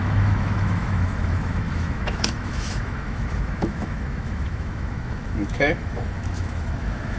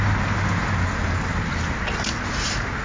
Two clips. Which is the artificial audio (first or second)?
first